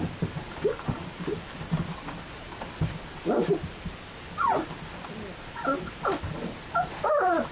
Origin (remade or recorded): recorded